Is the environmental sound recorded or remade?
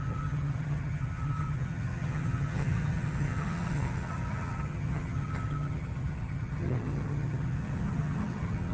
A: remade